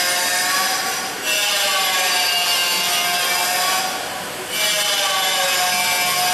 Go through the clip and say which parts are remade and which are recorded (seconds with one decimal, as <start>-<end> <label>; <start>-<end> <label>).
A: 0.0-6.3 recorded